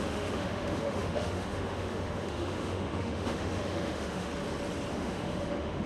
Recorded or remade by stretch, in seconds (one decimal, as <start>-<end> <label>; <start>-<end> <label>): 0.0-4.3 remade; 4.3-4.9 recorded; 4.9-5.9 remade